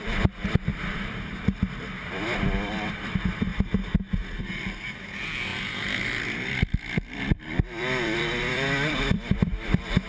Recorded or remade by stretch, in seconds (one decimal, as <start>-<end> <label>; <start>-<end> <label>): 0.0-3.5 remade; 3.5-4.4 recorded; 4.4-10.1 remade